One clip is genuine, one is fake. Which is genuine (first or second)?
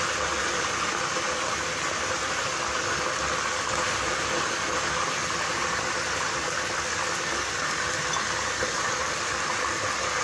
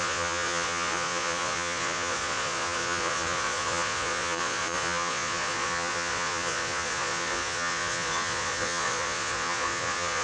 first